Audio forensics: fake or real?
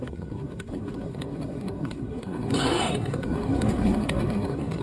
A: fake